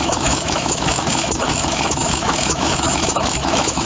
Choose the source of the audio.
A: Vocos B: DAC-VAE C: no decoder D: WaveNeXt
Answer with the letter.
B